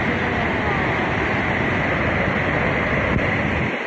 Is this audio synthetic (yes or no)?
no